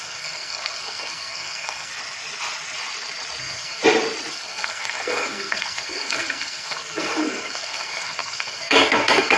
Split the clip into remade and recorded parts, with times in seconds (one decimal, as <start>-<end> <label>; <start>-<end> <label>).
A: 0.0-1.9 remade; 1.9-3.4 recorded; 3.4-3.8 remade; 3.8-4.3 recorded; 4.3-9.4 remade